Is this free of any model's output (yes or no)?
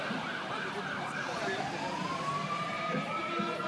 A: yes